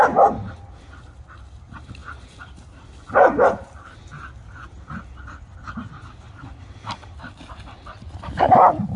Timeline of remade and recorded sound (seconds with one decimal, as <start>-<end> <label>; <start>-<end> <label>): 0.0-9.0 recorded